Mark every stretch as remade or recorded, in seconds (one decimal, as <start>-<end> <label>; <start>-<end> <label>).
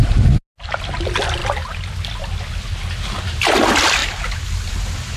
0.0-5.2 recorded